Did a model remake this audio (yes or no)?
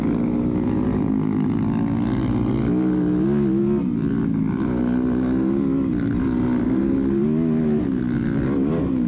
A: no